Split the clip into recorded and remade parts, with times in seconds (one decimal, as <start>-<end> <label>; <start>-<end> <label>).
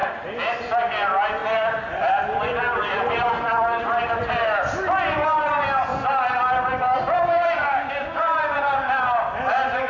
0.0-0.7 remade; 0.7-1.4 recorded; 1.4-4.3 remade; 4.3-9.9 recorded